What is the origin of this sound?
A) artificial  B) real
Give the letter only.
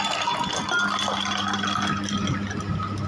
B